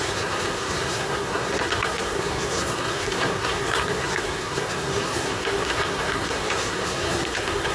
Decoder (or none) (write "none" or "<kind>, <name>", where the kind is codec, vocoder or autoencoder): codec, SNAC